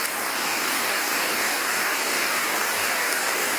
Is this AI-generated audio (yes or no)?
yes